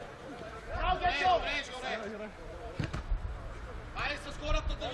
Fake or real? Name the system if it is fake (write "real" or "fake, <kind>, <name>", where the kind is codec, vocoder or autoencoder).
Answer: fake, vocoder, BigVGAN v2